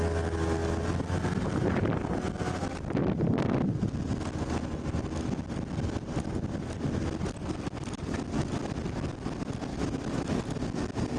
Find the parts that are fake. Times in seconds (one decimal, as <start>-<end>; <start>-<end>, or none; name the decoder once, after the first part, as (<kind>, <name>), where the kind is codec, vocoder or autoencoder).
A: 9.7-10.4 (autoencoder, DAC-VAE)